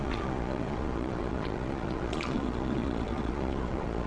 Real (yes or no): no